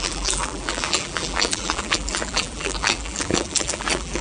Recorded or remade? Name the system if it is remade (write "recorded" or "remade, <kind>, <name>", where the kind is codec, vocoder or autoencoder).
remade, vocoder, BigVGAN v2